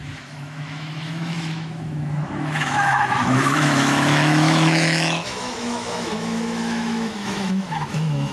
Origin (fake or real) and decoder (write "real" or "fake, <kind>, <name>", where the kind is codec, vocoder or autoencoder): fake, autoencoder, DAC-VAE